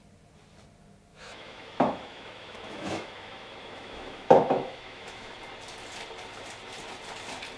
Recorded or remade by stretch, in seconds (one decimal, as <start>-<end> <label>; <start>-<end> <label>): 0.0-1.1 recorded; 1.1-5.3 remade; 5.3-7.6 recorded